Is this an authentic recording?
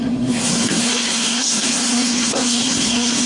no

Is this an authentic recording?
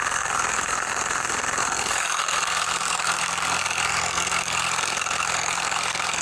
no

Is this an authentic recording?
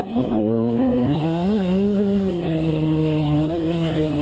no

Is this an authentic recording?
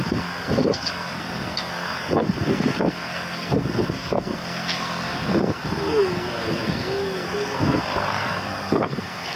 no